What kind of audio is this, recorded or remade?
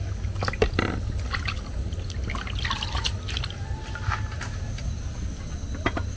recorded